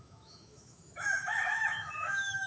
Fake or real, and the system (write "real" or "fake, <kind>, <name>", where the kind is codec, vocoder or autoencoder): fake, autoencoder, DAC-VAE